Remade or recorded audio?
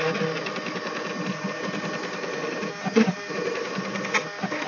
recorded